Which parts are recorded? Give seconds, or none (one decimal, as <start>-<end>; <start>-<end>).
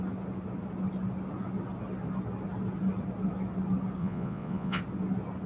0.0-4.0; 4.8-5.5